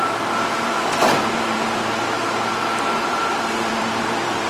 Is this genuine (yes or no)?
no